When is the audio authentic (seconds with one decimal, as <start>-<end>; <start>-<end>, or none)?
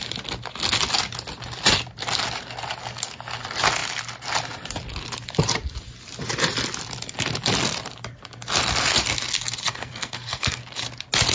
0.0-9.7; 10.6-11.3